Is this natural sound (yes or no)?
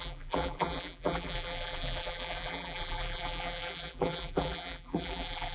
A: no